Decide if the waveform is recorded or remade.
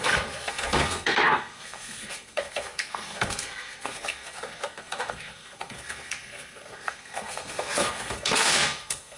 remade